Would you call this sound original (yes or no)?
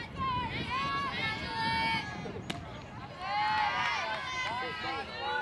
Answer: yes